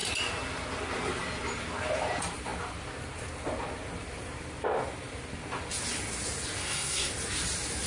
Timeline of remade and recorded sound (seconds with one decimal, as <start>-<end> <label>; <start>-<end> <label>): 0.0-6.6 recorded; 6.6-7.1 remade; 7.1-7.9 recorded